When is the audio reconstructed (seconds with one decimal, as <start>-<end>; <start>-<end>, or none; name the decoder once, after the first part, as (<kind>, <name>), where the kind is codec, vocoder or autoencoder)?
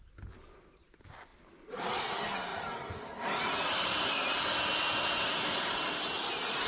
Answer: none